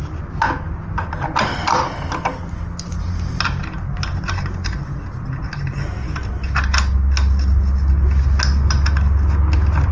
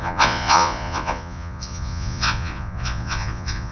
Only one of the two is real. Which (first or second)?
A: first